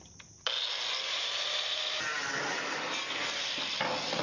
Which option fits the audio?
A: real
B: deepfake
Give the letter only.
A